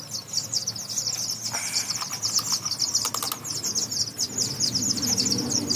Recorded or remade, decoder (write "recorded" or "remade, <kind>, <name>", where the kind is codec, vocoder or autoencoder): recorded